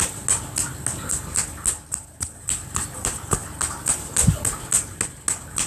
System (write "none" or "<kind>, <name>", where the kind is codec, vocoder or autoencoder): none